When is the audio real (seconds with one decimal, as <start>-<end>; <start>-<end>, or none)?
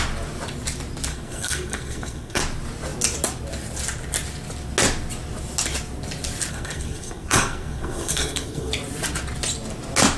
0.0-1.1; 2.4-6.5; 8.7-10.2